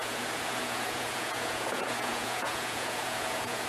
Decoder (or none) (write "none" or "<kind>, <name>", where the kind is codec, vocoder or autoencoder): vocoder, Vocos